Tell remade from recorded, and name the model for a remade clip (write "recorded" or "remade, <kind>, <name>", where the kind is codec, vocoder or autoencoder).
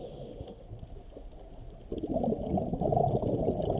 recorded